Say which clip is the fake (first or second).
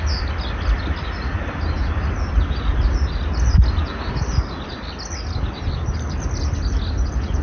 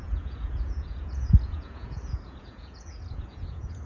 second